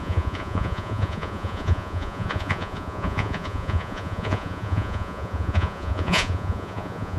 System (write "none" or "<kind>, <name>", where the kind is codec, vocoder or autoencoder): vocoder, Vocos